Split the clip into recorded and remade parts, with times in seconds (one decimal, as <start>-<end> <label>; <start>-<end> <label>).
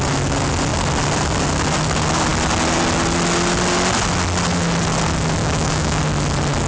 0.0-5.4 recorded; 5.4-6.0 remade; 6.0-6.7 recorded